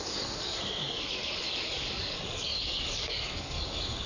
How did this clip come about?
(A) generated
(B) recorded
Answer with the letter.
A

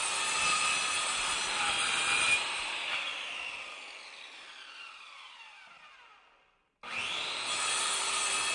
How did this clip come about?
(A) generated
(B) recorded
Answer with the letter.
B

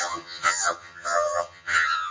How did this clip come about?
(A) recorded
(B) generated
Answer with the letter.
B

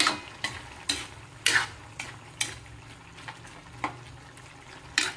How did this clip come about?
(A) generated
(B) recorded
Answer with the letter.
B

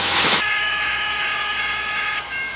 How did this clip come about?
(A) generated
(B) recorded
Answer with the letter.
A